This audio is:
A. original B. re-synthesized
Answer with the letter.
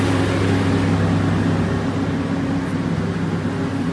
A